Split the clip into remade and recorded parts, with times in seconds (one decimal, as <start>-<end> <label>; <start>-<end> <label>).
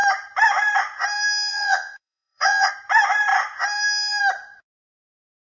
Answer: 0.0-1.5 recorded; 1.5-2.7 remade; 2.7-5.6 recorded